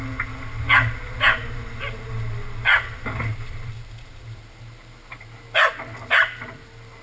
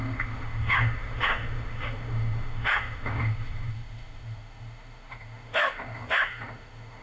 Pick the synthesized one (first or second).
second